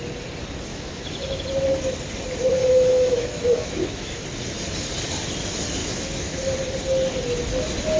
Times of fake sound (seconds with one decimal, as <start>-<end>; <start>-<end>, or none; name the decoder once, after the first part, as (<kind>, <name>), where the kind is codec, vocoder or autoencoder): 0.7-1.4 (autoencoder, DAC-VAE); 2.6-4.2; 5.8-6.4